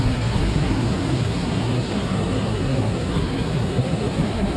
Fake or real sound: fake